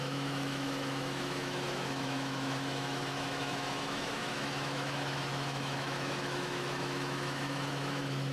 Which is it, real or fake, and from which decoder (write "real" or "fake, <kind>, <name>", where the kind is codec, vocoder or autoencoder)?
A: fake, autoencoder, DAC-VAE